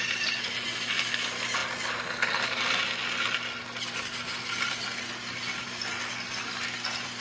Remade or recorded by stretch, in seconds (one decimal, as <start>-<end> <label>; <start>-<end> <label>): 0.0-7.2 recorded

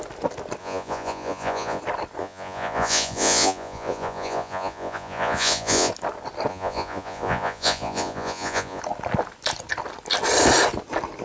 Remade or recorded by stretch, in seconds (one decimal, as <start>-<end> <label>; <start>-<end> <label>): 0.0-0.6 recorded; 0.6-1.8 remade; 1.8-2.2 recorded; 2.2-5.9 remade; 5.9-6.5 recorded; 6.5-8.8 remade; 8.8-11.2 recorded

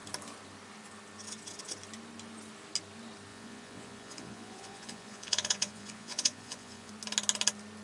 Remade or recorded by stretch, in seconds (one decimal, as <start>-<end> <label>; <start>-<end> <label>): 0.0-3.3 recorded; 3.3-6.9 remade; 6.9-7.8 recorded

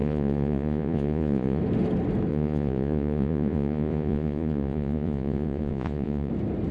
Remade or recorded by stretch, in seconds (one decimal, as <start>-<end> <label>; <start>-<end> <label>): 0.0-1.6 remade; 1.6-2.3 recorded; 2.3-6.3 remade; 6.3-6.7 recorded